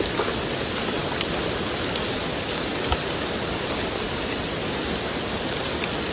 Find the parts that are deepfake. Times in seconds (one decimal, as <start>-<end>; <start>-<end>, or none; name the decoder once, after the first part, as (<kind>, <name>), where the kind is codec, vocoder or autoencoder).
none